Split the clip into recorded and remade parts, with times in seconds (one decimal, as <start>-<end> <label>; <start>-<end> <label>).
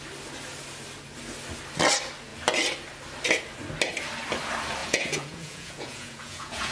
0.0-4.8 recorded; 4.8-6.7 remade